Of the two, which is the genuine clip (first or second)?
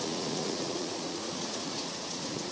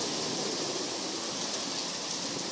second